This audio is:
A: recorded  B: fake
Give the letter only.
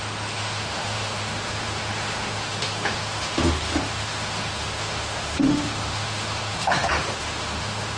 B